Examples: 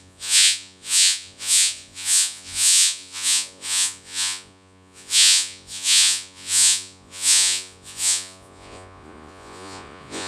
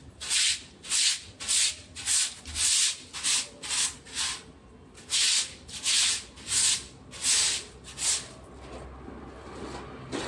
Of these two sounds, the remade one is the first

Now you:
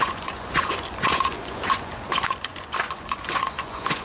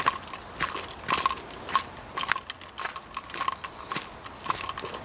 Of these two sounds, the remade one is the first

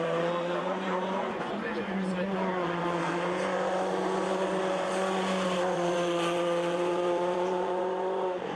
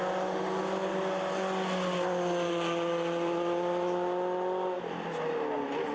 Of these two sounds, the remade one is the first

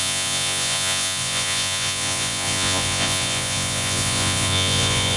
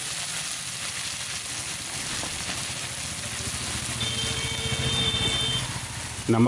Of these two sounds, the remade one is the first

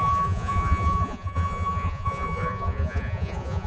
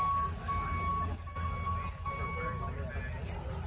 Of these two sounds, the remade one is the first